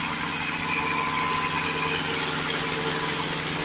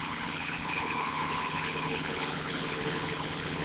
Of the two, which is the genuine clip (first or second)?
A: first